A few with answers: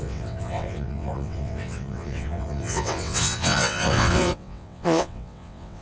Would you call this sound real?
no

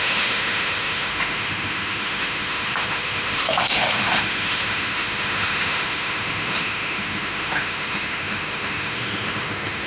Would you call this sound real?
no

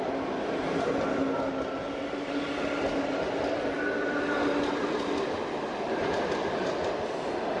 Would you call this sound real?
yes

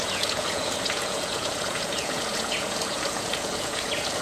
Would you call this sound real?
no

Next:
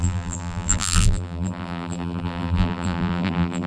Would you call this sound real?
no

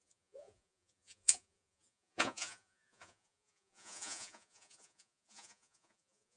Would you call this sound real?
no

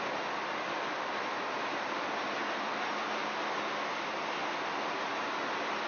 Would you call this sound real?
yes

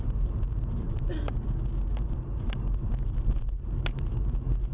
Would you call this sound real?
yes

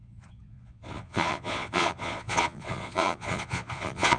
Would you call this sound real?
no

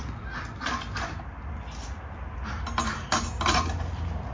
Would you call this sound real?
yes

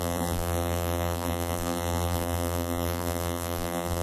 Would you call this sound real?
no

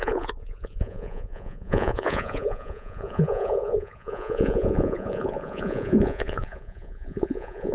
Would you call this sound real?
no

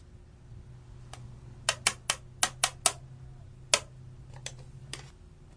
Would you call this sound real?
yes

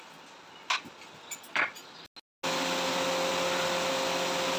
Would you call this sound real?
yes